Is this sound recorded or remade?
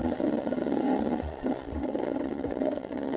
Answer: remade